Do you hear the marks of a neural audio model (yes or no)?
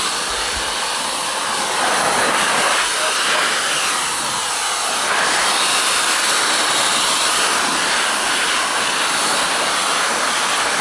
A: no